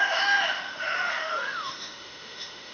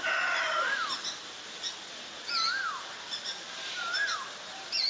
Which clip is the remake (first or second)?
first